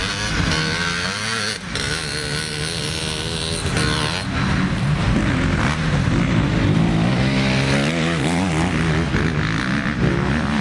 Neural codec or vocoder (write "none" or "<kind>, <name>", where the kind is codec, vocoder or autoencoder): none